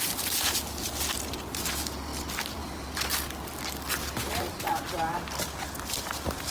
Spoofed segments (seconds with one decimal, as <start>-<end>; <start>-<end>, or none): none